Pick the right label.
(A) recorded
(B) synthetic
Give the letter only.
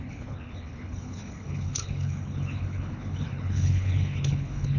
B